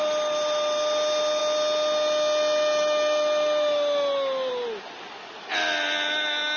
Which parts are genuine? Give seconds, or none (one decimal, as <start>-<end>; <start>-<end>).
0.0-6.6